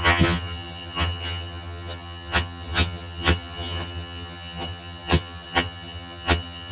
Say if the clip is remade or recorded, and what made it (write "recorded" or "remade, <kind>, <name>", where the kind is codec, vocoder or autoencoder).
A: remade, vocoder, HiFi-GAN